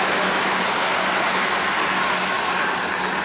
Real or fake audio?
real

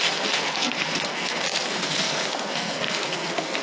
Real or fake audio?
fake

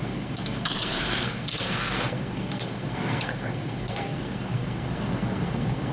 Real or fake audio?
fake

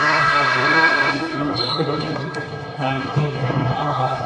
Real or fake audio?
fake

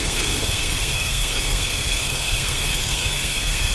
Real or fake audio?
fake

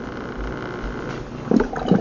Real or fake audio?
real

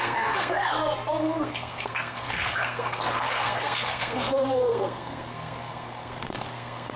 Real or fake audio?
fake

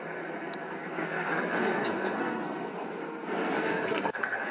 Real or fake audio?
fake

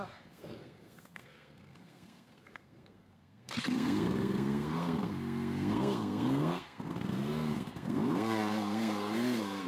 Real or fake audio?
fake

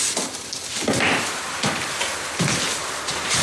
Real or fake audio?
real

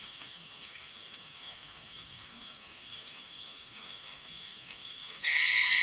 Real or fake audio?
fake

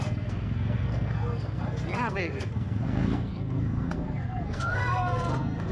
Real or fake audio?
fake